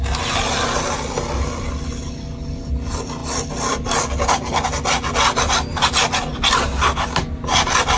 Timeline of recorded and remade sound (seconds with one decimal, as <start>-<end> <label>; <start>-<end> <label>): 0.0-8.0 recorded